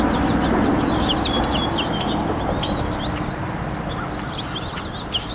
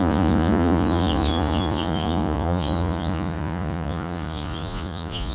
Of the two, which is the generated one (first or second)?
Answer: second